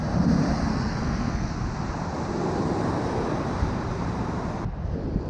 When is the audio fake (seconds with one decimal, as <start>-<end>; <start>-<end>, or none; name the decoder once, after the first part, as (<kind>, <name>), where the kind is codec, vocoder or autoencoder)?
0.7-1.5 (codec, SNAC)